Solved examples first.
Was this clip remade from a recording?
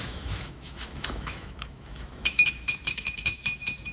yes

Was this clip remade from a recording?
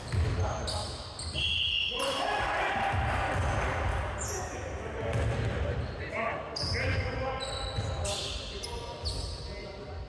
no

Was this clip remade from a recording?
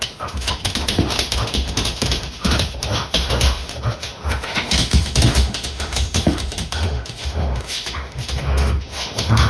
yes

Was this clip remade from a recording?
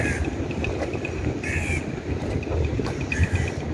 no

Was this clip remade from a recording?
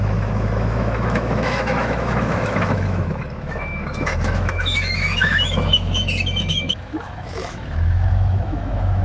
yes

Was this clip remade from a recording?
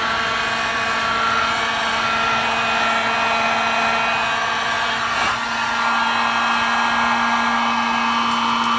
no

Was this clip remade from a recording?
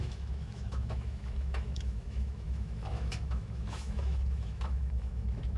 yes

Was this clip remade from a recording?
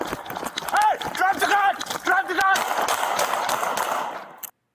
no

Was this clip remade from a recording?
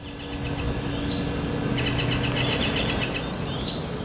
no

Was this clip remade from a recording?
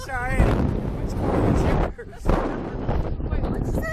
no